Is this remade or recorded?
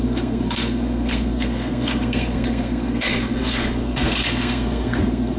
remade